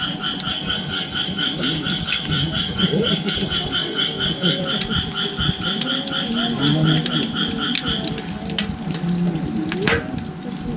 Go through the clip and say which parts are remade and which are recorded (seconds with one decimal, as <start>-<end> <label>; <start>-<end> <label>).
0.0-0.5 recorded; 0.5-4.6 remade; 4.6-10.8 recorded